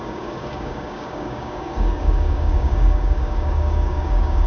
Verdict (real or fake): fake